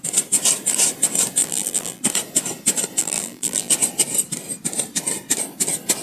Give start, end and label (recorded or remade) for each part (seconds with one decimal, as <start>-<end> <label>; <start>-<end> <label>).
0.0-1.4 recorded; 1.4-2.0 remade; 2.0-3.0 recorded; 3.0-3.7 remade; 3.7-6.0 recorded

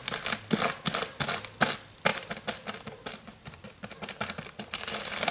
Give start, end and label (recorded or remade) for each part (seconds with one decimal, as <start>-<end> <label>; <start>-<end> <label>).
0.0-2.1 recorded; 2.1-5.3 remade

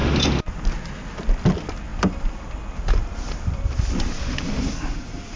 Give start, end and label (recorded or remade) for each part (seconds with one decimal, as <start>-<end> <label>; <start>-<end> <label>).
0.0-0.8 remade; 0.8-1.9 recorded; 1.9-5.4 remade

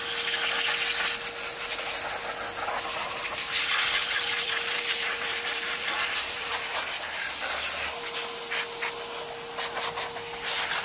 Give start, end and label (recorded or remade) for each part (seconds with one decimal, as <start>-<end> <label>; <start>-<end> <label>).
0.0-3.0 recorded; 3.0-3.6 remade; 3.6-4.0 recorded; 4.0-8.0 remade; 8.0-10.8 recorded

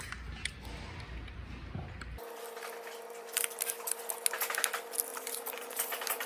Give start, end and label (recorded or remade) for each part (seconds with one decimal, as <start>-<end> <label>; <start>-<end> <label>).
0.0-5.1 recorded; 5.1-6.3 remade

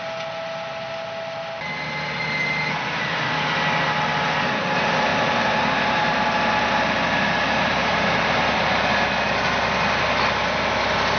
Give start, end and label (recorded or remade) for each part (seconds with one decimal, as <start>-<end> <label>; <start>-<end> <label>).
0.0-5.1 recorded; 5.1-9.1 remade; 9.1-11.2 recorded

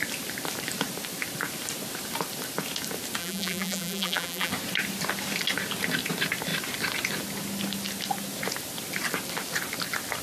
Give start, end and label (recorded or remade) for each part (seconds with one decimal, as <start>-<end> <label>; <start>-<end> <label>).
0.0-3.2 recorded; 3.2-4.5 remade; 4.5-10.2 recorded